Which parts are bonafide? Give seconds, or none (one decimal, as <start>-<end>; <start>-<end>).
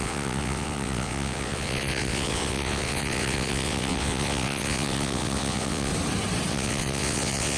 5.9-6.5